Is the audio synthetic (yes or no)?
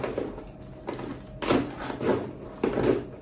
no